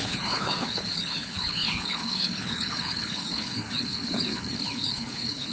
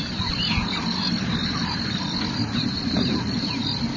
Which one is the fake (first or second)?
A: first